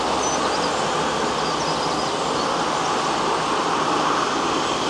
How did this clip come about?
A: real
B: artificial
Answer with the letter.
A